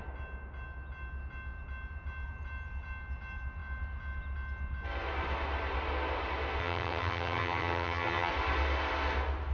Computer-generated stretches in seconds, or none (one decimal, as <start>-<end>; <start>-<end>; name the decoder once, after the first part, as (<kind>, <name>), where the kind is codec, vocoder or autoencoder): 6.6-8.3 (vocoder, HiFi-GAN)